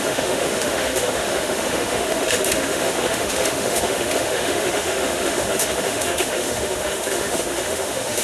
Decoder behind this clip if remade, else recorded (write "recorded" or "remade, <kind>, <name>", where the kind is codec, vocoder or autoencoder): remade, autoencoder, DAC-VAE